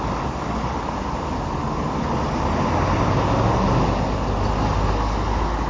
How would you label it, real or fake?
real